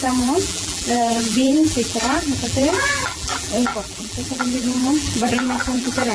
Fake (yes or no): yes